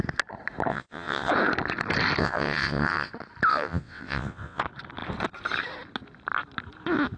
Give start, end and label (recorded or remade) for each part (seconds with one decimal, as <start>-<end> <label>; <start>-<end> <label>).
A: 0.0-0.7 recorded; 0.7-1.3 remade; 1.3-2.2 recorded; 2.2-3.1 remade; 3.1-3.5 recorded; 3.5-4.6 remade; 4.6-7.2 recorded